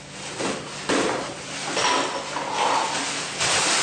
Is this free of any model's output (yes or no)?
yes